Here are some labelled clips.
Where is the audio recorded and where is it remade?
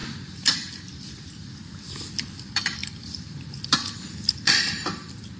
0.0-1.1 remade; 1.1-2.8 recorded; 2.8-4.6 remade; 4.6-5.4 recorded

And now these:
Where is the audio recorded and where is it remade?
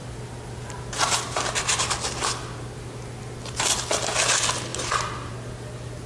0.0-6.1 recorded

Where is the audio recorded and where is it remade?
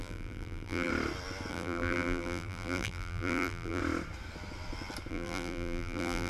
0.0-0.9 remade; 0.9-1.5 recorded; 1.5-3.8 remade; 3.8-5.1 recorded; 5.1-6.3 remade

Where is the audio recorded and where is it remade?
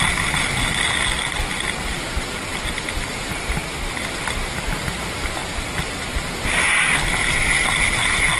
0.0-5.4 recorded; 5.4-6.2 remade; 6.2-8.4 recorded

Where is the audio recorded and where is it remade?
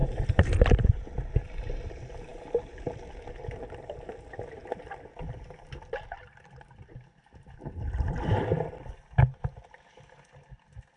0.0-1.3 remade; 1.3-11.0 recorded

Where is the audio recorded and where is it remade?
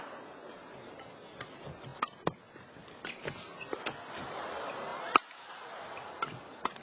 0.0-4.9 recorded; 4.9-5.5 remade; 5.5-6.8 recorded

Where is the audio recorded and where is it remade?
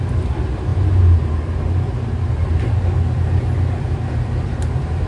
0.0-0.7 remade; 0.7-3.8 recorded; 3.8-5.1 remade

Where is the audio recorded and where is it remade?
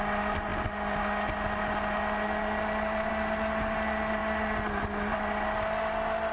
0.0-6.3 recorded